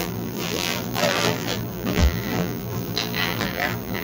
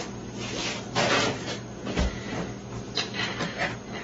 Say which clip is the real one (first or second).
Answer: second